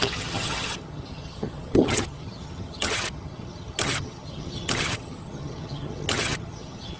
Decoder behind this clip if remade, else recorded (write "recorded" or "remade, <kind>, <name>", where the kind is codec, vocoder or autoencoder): remade, vocoder, HiFi-GAN